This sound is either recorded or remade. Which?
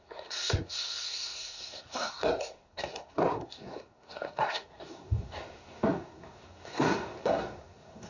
remade